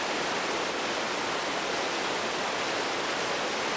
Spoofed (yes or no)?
no